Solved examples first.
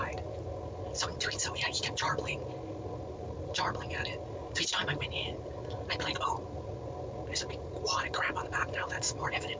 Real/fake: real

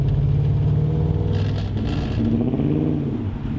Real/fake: real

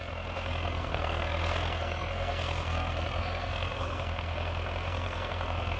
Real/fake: fake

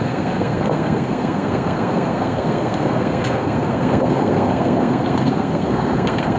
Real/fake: fake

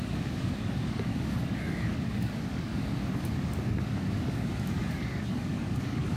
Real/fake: fake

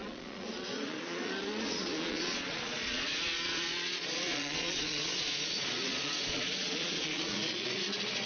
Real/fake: fake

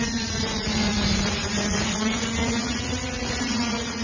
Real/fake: fake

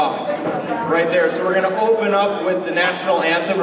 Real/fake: real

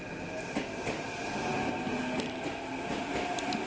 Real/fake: real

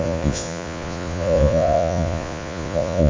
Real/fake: fake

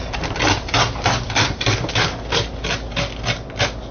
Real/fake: real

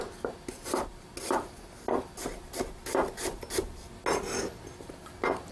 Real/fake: real